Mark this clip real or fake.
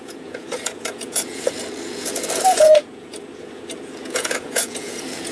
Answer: fake